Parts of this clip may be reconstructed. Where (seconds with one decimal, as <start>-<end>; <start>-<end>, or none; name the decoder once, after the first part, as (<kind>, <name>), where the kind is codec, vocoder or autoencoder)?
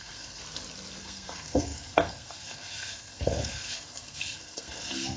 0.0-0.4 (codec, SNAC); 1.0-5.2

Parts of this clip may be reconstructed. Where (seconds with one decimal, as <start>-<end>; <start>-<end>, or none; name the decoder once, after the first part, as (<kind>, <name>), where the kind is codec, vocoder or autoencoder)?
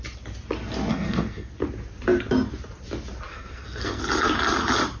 0.9-1.5 (codec, SNAC); 3.3-4.0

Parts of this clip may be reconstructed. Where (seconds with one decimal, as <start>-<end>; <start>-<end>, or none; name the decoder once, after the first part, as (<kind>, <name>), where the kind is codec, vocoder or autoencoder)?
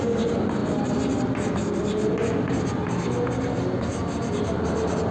none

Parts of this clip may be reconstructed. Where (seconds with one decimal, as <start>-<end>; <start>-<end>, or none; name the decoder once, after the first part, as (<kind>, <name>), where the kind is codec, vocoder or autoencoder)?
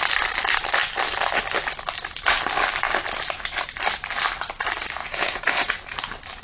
5.0-5.7 (vocoder, Vocos)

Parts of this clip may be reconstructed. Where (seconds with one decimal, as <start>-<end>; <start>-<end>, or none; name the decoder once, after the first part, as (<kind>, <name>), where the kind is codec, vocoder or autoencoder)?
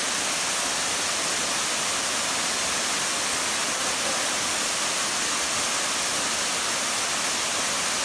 none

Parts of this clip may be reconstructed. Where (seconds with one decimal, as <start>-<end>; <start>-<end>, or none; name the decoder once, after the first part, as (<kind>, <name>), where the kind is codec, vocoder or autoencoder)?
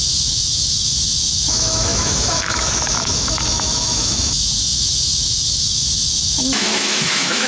0.0-7.5 (autoencoder, DAC-VAE)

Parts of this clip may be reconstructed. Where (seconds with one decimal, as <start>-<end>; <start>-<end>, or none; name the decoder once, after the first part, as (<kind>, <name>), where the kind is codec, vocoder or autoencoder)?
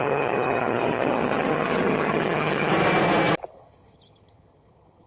0.0-2.7 (vocoder, HiFi-GAN); 3.5-5.1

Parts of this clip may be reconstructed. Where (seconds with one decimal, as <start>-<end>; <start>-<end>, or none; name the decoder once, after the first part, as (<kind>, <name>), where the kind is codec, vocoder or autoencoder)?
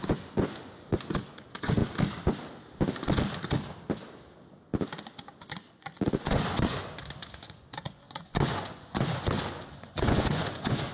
0.0-1.8 (vocoder, Vocos); 5.7-10.9